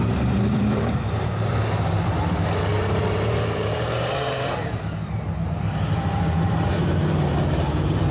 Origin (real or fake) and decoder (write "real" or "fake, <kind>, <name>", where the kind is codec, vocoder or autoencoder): fake, vocoder, BigVGAN v2